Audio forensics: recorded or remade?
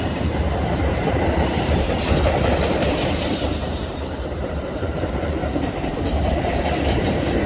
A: remade